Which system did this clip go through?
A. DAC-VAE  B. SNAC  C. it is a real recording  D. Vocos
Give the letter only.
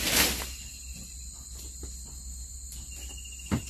C